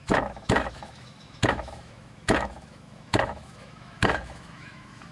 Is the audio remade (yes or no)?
yes